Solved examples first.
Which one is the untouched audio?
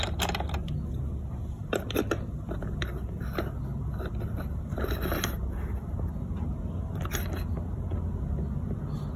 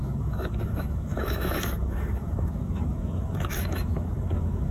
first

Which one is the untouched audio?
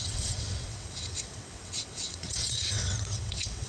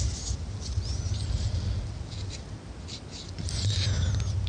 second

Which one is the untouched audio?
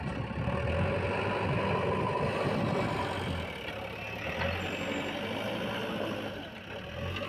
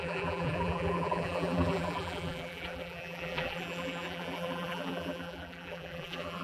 first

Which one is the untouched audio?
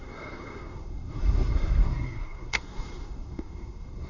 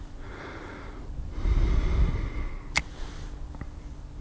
second